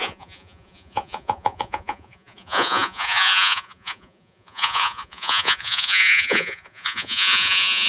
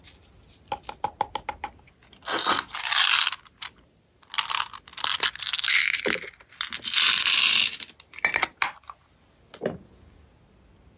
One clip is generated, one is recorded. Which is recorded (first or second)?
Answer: second